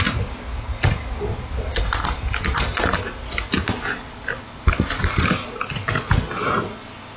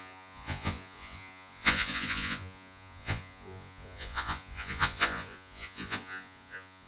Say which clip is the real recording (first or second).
first